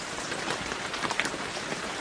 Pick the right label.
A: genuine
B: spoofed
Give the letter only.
A